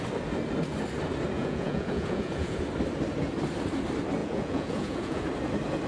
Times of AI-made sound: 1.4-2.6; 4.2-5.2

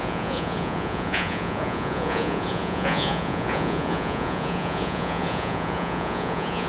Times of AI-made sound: 0.0-6.7